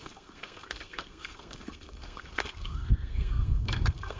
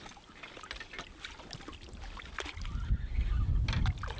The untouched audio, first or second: second